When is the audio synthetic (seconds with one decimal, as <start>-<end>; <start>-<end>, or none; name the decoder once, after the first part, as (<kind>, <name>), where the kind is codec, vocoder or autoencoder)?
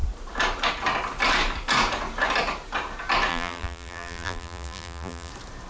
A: 3.3-5.3 (vocoder, BigVGAN v2)